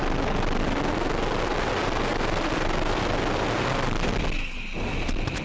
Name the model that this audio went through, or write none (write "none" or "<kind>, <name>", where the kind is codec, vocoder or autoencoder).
none